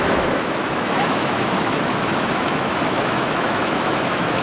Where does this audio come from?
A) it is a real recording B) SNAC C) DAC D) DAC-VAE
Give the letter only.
D